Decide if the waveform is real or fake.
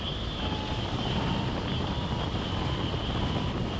real